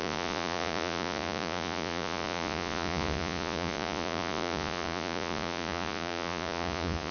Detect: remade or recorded remade